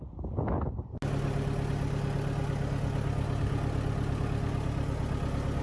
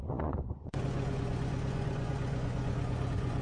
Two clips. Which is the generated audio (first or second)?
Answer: second